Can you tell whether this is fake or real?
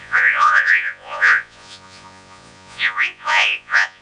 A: fake